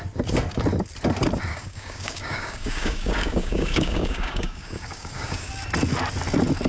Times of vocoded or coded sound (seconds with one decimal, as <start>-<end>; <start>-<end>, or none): 1.5-5.5